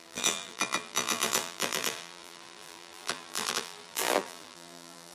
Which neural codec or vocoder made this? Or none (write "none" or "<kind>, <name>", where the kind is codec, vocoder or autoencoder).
vocoder, BigVGAN v2